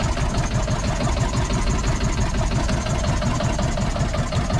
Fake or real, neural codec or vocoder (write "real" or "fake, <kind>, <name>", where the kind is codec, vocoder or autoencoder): real